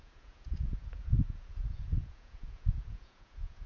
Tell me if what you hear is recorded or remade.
remade